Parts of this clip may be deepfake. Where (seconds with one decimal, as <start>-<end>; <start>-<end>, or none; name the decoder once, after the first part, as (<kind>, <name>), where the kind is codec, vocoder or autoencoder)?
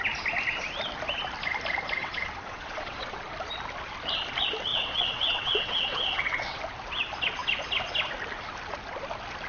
2.0-3.2 (vocoder, WaveNeXt); 4.7-6.6